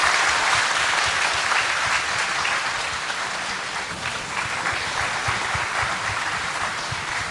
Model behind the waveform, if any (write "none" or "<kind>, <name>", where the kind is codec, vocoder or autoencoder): vocoder, BigVGAN v2